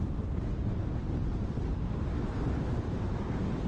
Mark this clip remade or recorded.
remade